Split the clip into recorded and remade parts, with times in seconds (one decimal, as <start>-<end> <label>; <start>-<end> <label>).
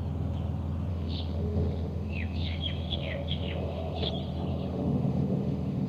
0.0-0.9 recorded; 0.9-4.1 remade; 4.1-4.5 recorded; 4.5-5.9 remade